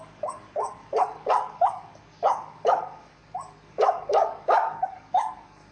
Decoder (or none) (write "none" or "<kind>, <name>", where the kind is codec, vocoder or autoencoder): codec, DAC